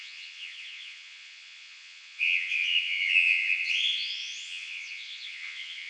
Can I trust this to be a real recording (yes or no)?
no